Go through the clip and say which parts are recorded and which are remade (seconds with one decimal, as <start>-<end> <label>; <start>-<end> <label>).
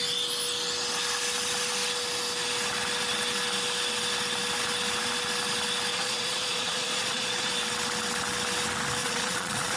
0.0-5.9 recorded; 5.9-7.5 remade; 7.5-9.0 recorded; 9.0-9.8 remade